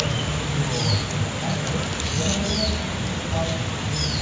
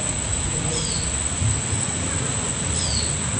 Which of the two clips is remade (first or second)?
second